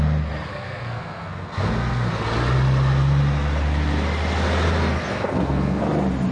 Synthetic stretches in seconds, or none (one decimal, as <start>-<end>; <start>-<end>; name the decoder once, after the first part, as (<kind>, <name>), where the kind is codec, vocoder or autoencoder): 0.5-2.1 (codec, SNAC); 5.0-5.8